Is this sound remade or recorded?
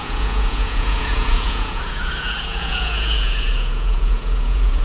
remade